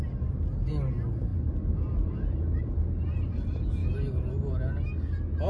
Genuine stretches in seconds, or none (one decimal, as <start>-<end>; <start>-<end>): 0.0-3.8; 4.6-5.5